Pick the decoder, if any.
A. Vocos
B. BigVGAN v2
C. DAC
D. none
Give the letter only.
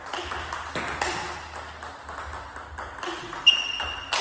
D